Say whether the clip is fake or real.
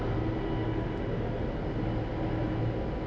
real